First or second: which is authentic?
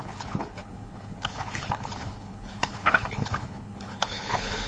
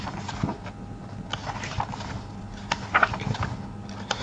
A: second